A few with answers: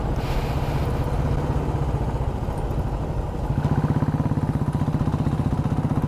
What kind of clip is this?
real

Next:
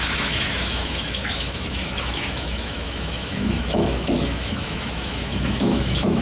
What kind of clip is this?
fake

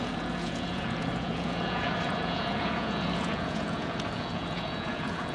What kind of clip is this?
fake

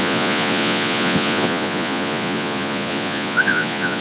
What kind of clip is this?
fake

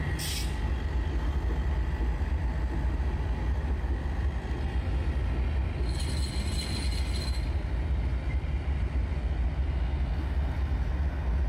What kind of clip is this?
real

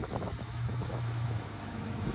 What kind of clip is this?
fake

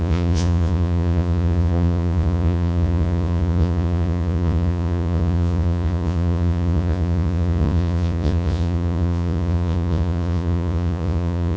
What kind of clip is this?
fake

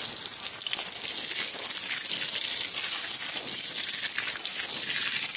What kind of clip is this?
real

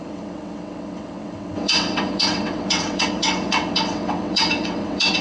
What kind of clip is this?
fake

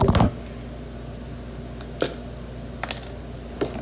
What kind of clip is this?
real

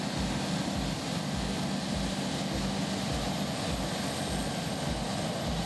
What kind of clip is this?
real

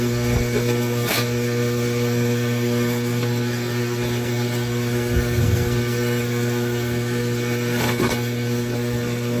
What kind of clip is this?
fake